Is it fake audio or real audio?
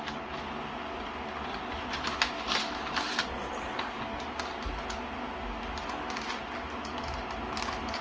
real